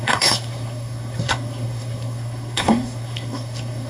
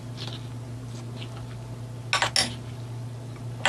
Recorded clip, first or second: second